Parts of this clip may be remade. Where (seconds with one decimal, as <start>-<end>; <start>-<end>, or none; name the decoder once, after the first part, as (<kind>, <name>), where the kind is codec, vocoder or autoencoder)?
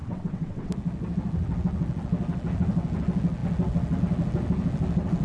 0.0-0.7 (vocoder, WaveNeXt)